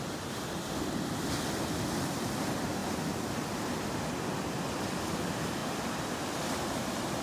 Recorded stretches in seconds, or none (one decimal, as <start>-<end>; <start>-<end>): 0.0-7.2